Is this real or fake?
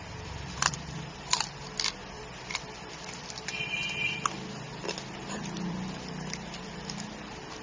fake